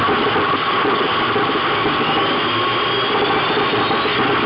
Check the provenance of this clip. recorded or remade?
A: recorded